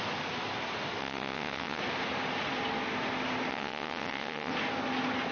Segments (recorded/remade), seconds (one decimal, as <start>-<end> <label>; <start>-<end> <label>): 0.0-1.0 recorded; 1.0-1.8 remade; 1.8-3.5 recorded; 3.5-4.5 remade; 4.5-5.3 recorded